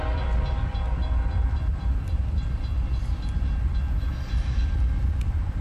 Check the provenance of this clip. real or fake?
fake